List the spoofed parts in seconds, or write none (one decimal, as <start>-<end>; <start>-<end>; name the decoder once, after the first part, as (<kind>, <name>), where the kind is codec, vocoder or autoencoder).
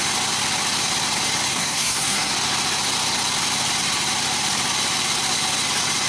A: 1.5-2.3 (codec, SNAC)